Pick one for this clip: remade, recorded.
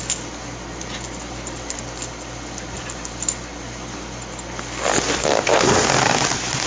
recorded